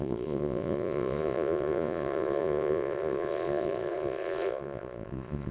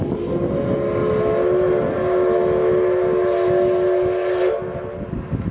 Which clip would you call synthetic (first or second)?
first